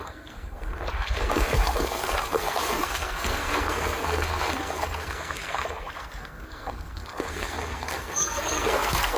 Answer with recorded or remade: remade